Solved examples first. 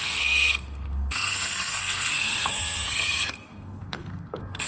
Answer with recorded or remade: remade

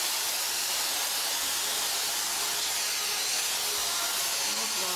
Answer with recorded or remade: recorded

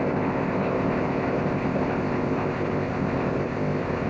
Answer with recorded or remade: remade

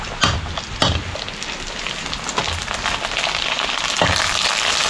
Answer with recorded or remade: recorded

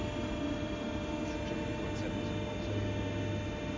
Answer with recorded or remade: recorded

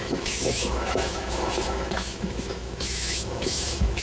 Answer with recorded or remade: remade